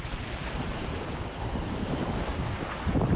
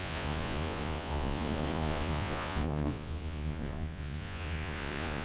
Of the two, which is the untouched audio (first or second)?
first